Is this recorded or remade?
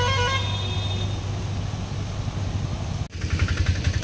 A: recorded